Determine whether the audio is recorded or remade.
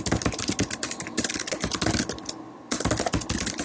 recorded